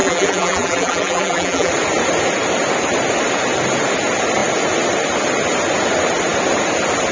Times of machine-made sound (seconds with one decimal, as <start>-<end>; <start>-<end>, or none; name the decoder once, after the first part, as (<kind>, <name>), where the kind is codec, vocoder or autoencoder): 0.0-1.7 (vocoder, BigVGAN v2)